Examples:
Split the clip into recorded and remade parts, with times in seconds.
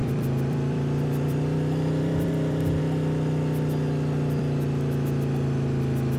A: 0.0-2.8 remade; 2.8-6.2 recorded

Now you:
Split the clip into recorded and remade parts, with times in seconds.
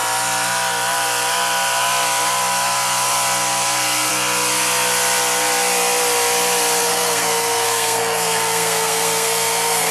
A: 0.0-6.8 recorded; 6.8-9.9 remade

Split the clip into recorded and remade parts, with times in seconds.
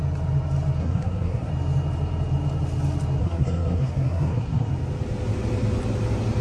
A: 0.0-0.8 recorded; 0.8-1.5 remade; 1.5-3.2 recorded; 3.2-4.7 remade; 4.7-6.4 recorded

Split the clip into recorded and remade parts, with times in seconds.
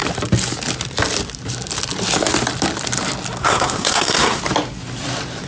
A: 0.0-3.4 recorded; 3.4-4.4 remade; 4.4-5.5 recorded